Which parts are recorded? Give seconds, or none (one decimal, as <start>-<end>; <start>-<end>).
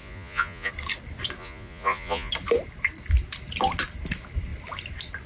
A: 0.7-1.4; 2.3-5.3